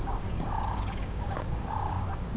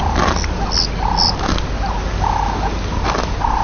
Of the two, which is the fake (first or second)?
first